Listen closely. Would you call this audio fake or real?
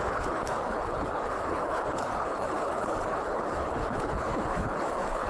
fake